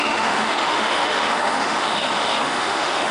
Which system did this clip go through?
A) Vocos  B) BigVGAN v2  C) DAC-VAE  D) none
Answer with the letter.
C